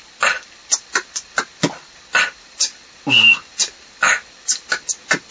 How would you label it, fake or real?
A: real